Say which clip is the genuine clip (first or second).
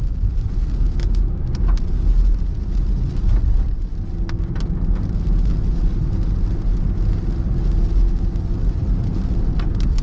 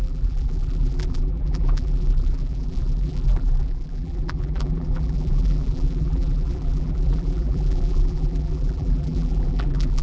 first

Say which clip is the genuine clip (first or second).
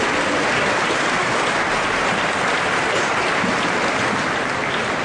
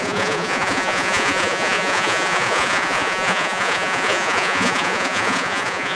first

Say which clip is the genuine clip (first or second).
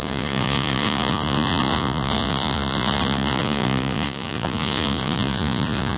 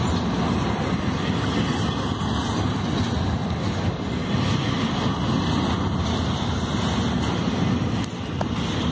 second